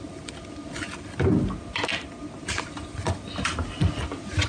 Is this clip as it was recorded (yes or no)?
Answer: yes